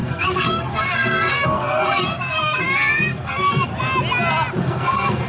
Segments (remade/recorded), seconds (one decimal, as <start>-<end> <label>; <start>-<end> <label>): 0.0-3.7 remade; 3.7-4.6 recorded; 4.6-5.3 remade